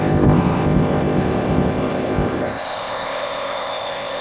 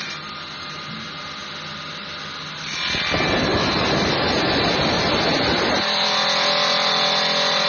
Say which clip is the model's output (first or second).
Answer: first